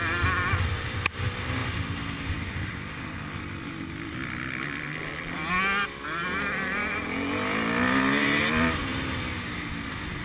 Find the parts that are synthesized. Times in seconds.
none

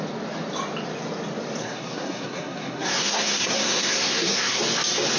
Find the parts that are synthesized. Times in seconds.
1.6-4.6

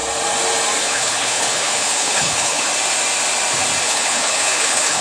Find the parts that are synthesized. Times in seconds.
0.8-2.7; 3.8-5.0

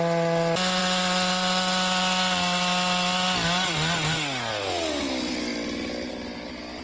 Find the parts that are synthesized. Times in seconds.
none

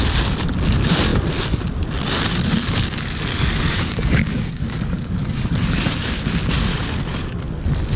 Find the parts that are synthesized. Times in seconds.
3.3-6.2; 6.7-7.6